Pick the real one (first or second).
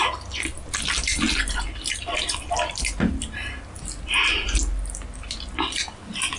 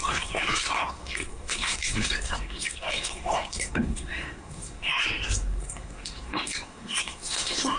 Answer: first